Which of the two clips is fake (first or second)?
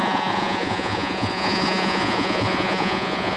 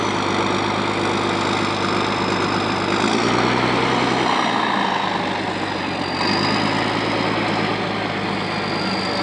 first